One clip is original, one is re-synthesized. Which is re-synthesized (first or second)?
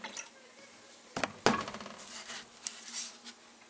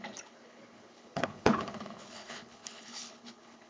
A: second